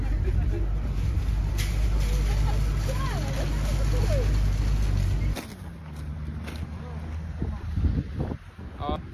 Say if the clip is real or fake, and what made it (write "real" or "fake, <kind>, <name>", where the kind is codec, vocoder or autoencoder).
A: real